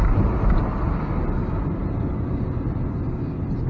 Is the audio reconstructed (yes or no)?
no